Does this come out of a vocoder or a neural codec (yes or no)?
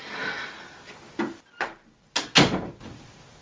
no